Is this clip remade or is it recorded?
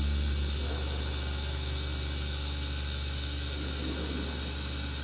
recorded